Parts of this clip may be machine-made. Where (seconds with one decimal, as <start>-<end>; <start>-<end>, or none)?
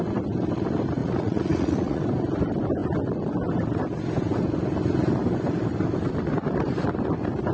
1.0-2.0